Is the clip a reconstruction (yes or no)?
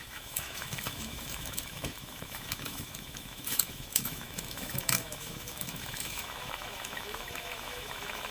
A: yes